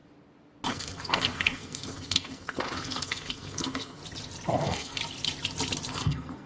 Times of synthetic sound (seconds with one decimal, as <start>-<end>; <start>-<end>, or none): 0.7-4.0; 4.6-5.0; 5.9-6.5